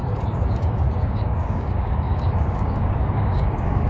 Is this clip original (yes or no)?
no